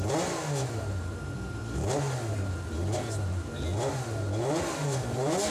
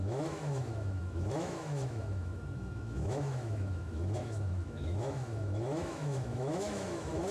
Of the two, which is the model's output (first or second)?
second